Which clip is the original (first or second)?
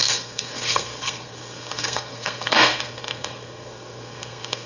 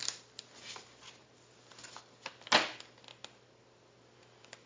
second